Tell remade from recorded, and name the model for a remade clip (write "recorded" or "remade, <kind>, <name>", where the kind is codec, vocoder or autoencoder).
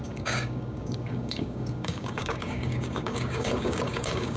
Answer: remade, codec, DAC